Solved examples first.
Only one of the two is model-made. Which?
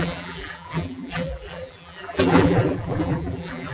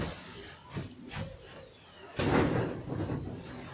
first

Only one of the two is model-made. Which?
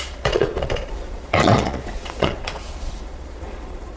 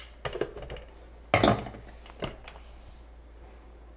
first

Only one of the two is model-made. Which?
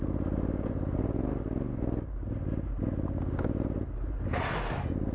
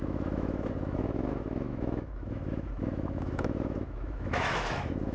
second